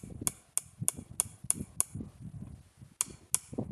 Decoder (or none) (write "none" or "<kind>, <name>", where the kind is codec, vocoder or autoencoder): none